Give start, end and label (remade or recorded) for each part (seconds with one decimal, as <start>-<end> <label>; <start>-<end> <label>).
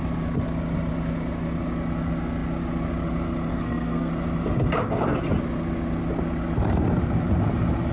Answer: 0.0-3.5 recorded; 3.5-4.1 remade; 4.1-7.9 recorded